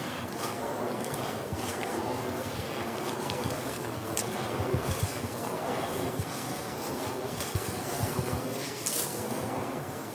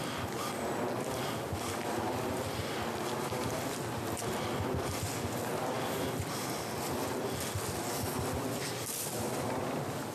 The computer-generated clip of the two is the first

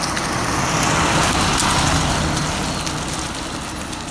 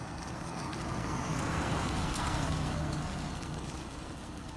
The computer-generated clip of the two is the second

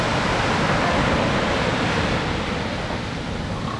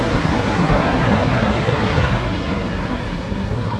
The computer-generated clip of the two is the second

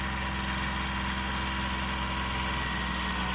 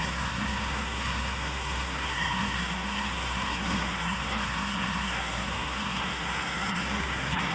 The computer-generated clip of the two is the second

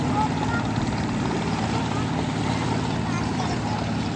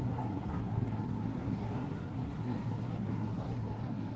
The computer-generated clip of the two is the second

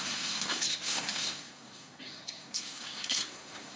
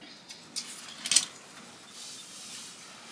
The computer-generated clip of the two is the first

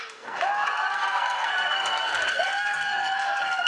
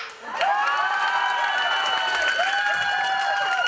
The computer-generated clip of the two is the first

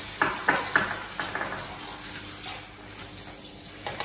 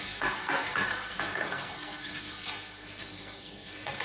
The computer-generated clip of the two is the second